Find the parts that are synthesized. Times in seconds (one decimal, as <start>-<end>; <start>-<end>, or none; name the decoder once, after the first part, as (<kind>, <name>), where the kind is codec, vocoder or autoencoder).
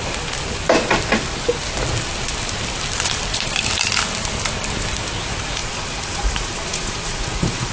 5.6-7.7 (vocoder, Vocos)